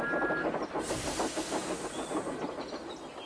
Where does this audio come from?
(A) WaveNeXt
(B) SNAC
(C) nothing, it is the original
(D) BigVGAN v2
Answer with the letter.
C